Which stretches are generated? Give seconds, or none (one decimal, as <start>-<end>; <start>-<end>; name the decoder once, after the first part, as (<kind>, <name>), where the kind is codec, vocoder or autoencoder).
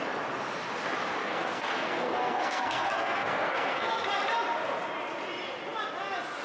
1.2-4.1 (codec, SNAC)